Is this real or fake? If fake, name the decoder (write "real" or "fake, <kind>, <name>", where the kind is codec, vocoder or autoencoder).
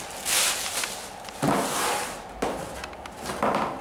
real